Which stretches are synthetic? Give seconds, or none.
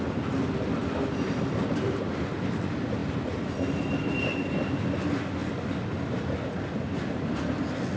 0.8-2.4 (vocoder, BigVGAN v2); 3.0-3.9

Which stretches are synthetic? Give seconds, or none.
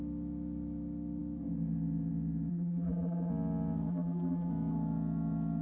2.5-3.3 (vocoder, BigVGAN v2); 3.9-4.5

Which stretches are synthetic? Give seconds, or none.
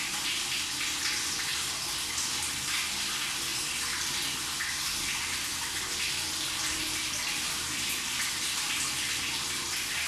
none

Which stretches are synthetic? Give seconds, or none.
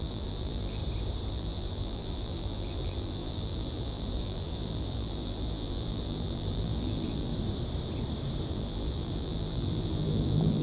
0.0-0.8 (vocoder, BigVGAN v2); 1.3-7.3; 8.5-10.6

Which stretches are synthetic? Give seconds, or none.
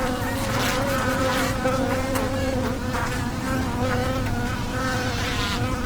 none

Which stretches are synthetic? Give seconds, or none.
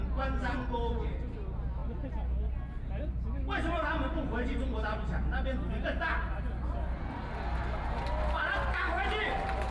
none